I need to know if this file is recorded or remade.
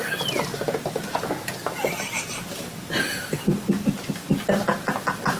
recorded